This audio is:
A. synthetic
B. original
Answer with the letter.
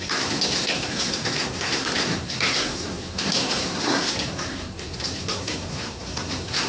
A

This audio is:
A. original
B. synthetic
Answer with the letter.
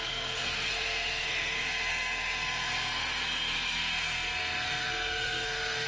B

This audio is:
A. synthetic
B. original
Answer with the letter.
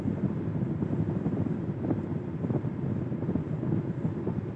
B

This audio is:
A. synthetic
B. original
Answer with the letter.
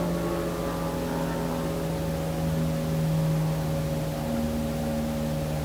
B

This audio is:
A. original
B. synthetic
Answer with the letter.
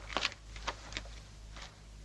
A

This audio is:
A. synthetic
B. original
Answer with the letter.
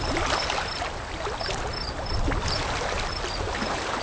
B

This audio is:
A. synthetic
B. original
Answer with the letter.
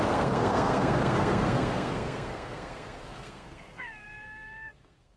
A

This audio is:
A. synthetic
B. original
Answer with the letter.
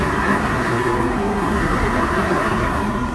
A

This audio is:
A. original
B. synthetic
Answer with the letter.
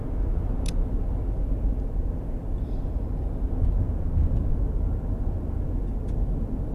A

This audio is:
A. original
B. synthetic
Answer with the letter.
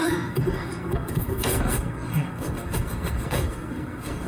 B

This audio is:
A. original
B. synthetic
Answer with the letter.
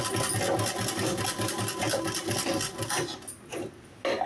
A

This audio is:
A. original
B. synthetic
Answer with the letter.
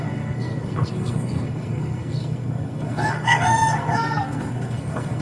B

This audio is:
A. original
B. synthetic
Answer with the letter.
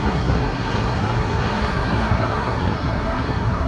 B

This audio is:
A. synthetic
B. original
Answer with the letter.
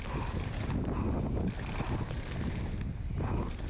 B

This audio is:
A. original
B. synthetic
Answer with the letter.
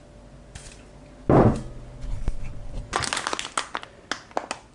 A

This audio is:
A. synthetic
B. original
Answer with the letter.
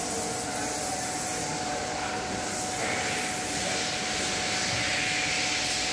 B